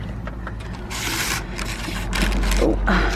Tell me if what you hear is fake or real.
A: real